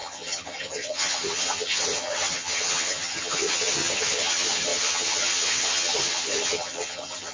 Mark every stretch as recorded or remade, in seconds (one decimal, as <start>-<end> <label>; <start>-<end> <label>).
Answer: 0.0-7.3 remade